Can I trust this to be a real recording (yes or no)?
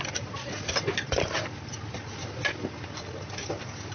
yes